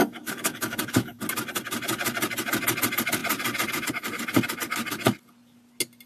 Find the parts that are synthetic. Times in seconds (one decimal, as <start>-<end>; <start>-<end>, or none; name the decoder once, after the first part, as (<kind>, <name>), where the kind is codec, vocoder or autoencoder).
0.0-1.2 (codec, DAC)